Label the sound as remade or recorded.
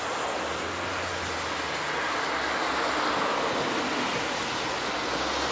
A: recorded